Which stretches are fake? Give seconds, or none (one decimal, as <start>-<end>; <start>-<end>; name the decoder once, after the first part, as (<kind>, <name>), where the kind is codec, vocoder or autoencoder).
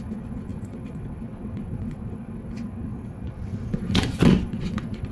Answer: 0.0-5.1 (vocoder, WaveNeXt)